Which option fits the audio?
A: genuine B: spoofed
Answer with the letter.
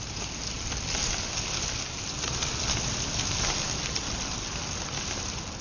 A